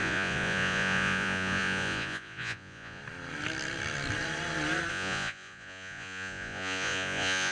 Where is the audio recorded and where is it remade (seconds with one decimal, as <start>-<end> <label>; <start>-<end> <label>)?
0.0-3.0 remade; 3.0-4.9 recorded; 4.9-7.5 remade